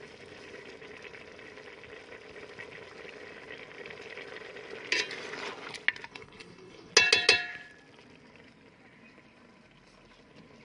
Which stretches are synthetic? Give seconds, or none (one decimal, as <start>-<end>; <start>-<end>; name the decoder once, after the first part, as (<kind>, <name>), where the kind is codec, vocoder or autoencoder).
6.1-6.9 (codec, HILCodec)